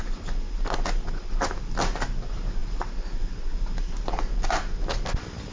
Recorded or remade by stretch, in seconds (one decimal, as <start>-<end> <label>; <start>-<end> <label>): 0.0-5.5 recorded